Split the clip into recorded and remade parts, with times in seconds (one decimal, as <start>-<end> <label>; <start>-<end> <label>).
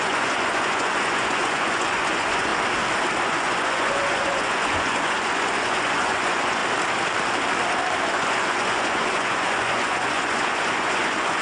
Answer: 0.0-2.5 remade; 2.5-3.2 recorded; 3.2-6.6 remade; 6.6-8.0 recorded; 8.0-11.4 remade